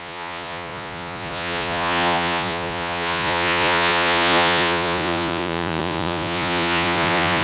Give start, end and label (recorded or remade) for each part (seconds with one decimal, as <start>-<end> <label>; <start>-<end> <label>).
0.0-7.4 remade